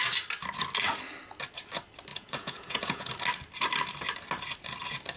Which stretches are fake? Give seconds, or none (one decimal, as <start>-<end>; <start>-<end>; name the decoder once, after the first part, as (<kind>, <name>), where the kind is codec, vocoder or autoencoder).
2.1-3.1 (vocoder, Vocos)